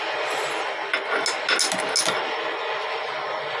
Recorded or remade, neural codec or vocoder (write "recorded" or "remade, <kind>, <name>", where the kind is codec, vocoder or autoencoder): recorded